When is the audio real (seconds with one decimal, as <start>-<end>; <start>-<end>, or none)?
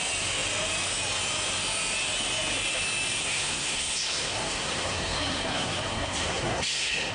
0.0-3.2